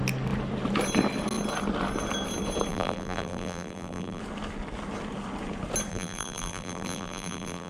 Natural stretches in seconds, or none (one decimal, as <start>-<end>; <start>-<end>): 0.0-2.7; 4.2-5.9